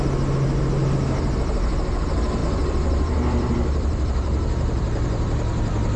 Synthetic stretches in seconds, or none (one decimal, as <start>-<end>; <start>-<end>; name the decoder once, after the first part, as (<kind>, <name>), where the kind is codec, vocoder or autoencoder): 2.4-6.0 (vocoder, BigVGAN v2)

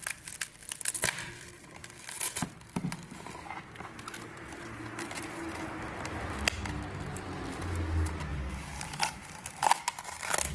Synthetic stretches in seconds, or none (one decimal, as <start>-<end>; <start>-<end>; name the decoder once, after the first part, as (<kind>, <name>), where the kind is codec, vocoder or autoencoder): 8.3-9.8 (codec, DAC)

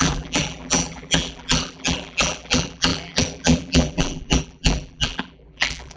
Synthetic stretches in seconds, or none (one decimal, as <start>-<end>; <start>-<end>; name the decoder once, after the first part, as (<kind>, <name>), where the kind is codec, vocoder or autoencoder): 0.0-6.0 (vocoder, BigVGAN v2)

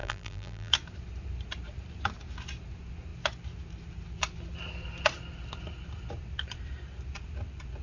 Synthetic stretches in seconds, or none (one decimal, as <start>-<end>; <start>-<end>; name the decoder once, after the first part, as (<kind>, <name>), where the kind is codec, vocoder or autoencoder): 0.0-0.7 (vocoder, BigVGAN v2)